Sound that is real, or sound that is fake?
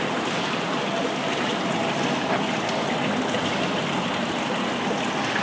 real